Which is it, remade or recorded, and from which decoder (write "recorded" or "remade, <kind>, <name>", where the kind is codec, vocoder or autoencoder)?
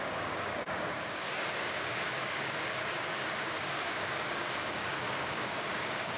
remade, codec, DAC